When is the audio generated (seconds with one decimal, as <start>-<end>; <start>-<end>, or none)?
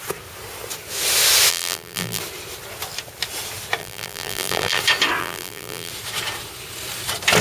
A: 1.5-2.2; 3.8-4.8; 5.2-5.9